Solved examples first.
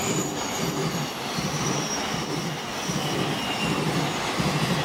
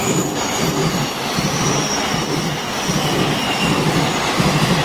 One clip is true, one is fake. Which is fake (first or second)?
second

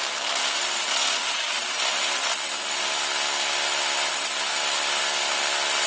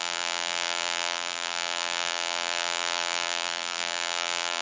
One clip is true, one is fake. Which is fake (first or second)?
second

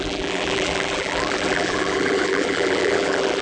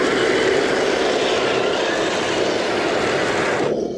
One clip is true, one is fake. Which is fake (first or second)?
first